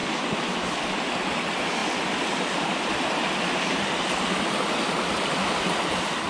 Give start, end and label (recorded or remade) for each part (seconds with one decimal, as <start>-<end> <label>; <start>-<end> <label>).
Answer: 0.0-6.3 recorded